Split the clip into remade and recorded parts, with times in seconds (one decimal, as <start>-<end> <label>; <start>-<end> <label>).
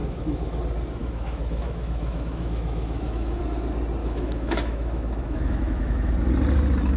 0.0-0.6 remade; 0.6-1.0 recorded; 1.0-3.4 remade; 3.4-4.0 recorded; 4.0-6.1 remade; 6.1-7.0 recorded